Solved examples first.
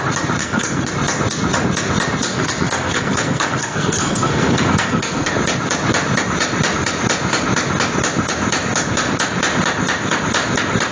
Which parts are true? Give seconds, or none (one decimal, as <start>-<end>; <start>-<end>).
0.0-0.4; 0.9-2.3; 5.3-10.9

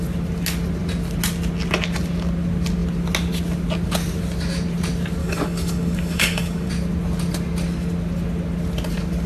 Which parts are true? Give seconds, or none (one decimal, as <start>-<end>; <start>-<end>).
0.0-5.2; 6.7-9.3

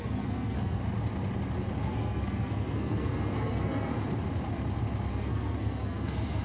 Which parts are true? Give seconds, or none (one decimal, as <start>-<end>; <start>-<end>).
0.8-1.8; 3.9-5.1

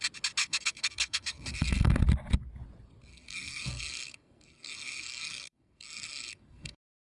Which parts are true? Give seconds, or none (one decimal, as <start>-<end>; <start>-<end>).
0.0-0.4; 2.0-3.1

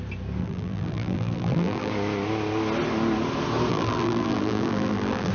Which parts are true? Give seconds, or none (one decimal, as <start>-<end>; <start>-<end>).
0.0-0.4; 1.9-3.7

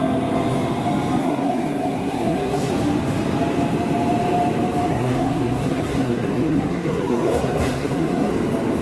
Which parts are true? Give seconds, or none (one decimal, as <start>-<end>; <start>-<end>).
0.0-1.2; 2.7-4.9; 8.3-8.8